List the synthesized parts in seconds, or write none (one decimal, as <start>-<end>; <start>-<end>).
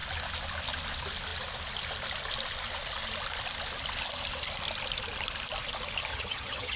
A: 6.1-6.8